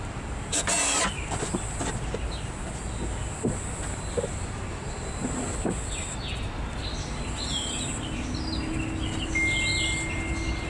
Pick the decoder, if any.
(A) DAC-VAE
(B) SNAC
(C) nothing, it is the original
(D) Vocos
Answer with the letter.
C